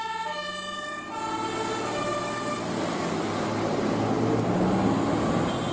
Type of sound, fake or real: real